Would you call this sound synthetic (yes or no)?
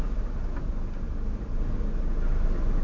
no